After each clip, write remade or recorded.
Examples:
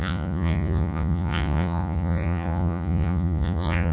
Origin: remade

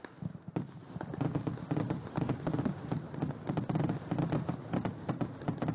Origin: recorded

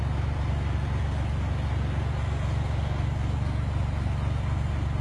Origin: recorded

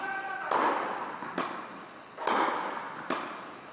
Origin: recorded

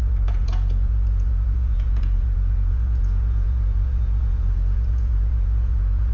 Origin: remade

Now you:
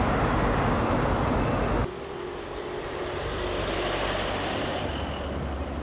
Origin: recorded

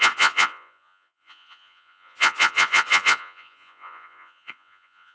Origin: remade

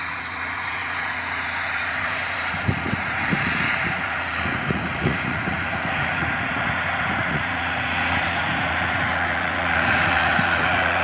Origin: remade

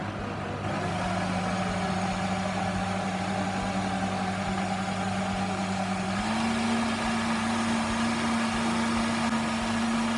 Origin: recorded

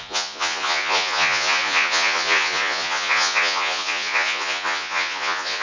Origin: remade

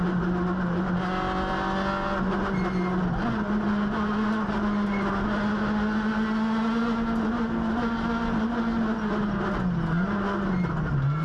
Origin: recorded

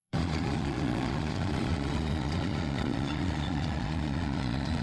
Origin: remade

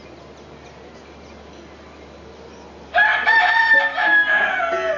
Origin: recorded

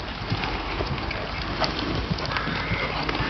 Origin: recorded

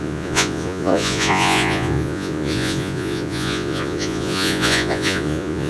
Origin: remade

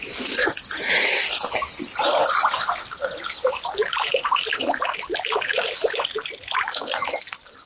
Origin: recorded